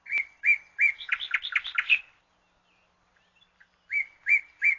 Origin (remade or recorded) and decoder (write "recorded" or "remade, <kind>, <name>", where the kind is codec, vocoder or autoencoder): recorded